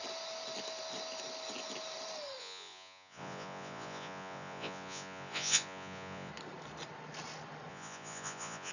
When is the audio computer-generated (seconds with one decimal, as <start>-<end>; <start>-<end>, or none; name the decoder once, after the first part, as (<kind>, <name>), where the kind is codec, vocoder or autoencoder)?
2.4-6.3 (vocoder, Vocos); 7.7-8.7